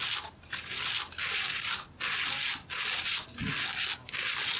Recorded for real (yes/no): yes